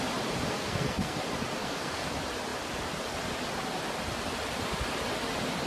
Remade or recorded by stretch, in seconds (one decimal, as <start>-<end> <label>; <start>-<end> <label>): 0.0-0.5 recorded; 0.5-1.2 remade; 1.2-1.6 recorded; 1.6-2.1 remade; 2.1-5.7 recorded